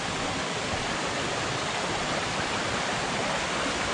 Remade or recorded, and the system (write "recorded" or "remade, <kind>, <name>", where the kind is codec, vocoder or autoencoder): recorded